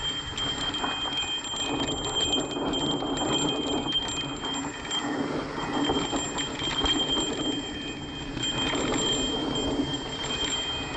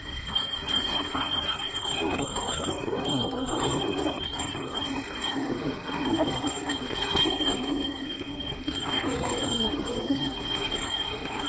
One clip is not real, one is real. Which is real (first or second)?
first